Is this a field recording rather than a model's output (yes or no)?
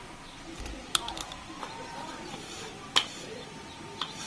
yes